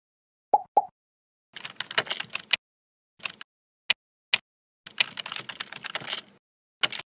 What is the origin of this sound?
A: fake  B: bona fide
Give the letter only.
B